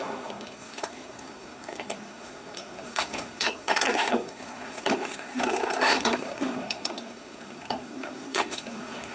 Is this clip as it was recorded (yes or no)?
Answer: no